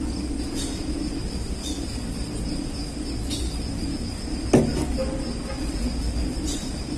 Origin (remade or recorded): recorded